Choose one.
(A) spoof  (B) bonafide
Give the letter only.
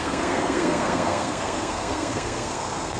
A